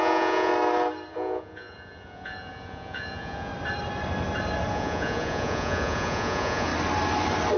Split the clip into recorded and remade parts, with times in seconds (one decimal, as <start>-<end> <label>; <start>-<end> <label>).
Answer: 0.0-0.5 remade; 0.5-1.1 recorded; 1.1-3.5 remade; 3.5-4.7 recorded; 4.7-6.7 remade; 6.7-7.6 recorded